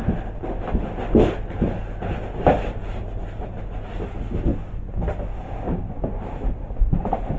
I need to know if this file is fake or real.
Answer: real